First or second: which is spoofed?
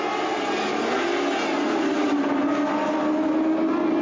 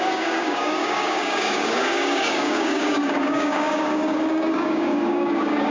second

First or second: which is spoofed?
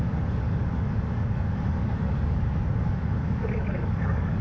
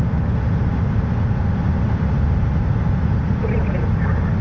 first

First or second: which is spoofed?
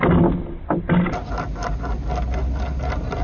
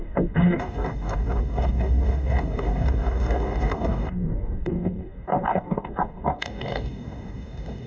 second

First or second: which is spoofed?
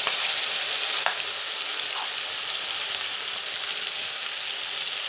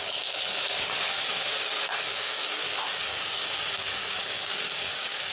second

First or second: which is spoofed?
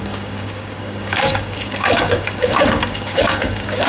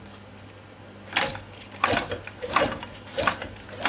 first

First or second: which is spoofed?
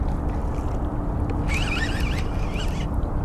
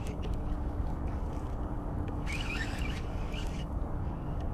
second